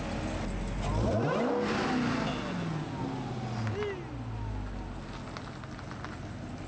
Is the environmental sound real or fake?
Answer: real